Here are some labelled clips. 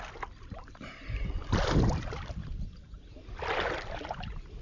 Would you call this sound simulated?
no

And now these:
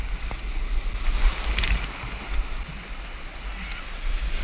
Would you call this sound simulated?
no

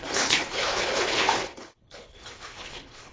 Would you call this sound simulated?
yes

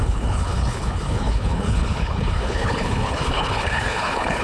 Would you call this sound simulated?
yes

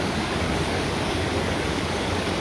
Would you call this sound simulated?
yes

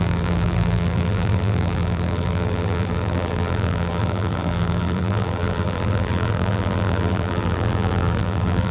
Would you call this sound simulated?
yes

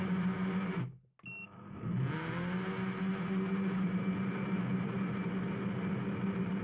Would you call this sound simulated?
no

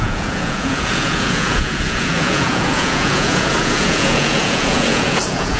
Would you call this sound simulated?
yes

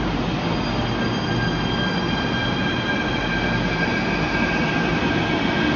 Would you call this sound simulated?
no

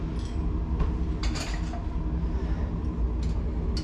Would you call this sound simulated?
no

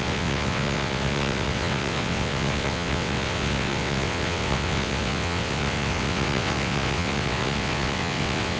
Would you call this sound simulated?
yes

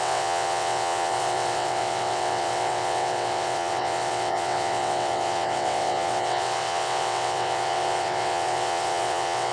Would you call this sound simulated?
yes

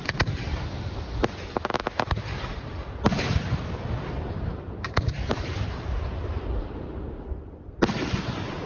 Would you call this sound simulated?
no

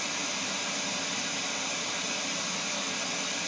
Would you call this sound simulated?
no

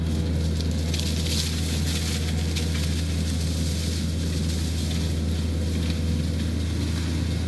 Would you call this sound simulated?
no